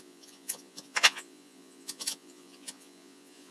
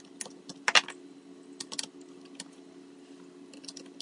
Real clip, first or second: second